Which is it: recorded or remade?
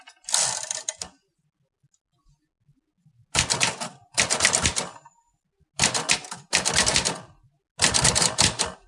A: recorded